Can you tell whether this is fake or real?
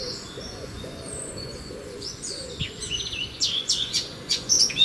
fake